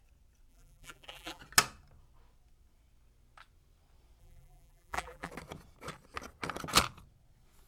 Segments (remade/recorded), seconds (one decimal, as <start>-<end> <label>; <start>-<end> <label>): 0.0-0.5 recorded; 0.5-1.4 remade; 1.4-4.2 recorded; 4.2-5.3 remade; 5.3-7.7 recorded